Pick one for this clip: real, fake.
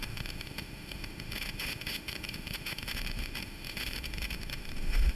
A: fake